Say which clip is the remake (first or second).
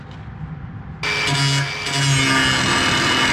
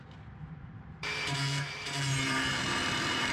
second